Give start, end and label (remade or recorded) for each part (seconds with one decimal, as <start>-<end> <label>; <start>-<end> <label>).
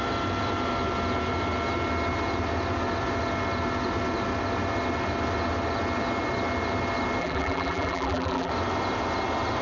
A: 0.0-7.2 recorded; 7.2-8.5 remade; 8.5-9.6 recorded